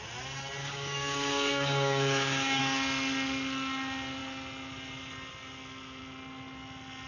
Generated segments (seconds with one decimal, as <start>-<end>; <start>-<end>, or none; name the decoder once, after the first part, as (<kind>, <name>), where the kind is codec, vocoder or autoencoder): 0.6-2.6 (codec, DAC)

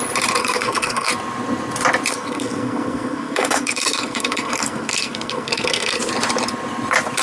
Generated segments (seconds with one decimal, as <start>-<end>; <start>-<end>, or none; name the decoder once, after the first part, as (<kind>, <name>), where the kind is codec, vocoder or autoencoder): 0.4-1.1 (codec, SNAC); 2.1-6.1

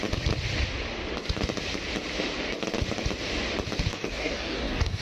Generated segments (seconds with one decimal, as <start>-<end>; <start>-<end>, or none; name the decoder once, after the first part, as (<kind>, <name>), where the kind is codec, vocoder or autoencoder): 3.9-5.0 (codec, DAC)

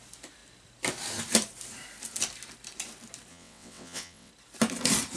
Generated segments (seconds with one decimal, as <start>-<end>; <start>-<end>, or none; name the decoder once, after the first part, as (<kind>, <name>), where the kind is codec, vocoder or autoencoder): 3.3-4.3 (vocoder, WaveNeXt)

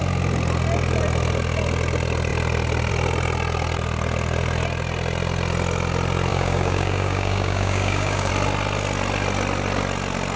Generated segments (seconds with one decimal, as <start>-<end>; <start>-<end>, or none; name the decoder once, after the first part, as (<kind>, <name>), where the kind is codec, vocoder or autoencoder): 6.3-8.3 (codec, DAC)

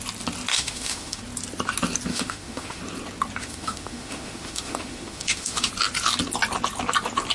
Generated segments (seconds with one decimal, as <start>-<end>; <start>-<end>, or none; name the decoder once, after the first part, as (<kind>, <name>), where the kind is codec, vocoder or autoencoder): 0.5-1.2 (autoencoder, DAC-VAE); 2.1-2.8; 3.4-5.7

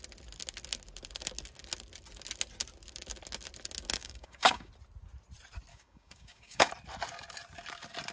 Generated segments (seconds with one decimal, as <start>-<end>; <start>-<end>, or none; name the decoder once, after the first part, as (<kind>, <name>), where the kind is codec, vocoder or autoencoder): 4.0-4.7 (codec, DAC); 5.7-6.7